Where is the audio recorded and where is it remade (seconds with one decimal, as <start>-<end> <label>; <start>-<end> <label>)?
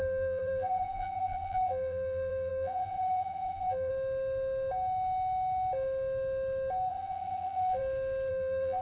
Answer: 0.0-3.9 remade; 3.9-6.9 recorded; 6.9-7.8 remade; 7.8-8.3 recorded; 8.3-8.8 remade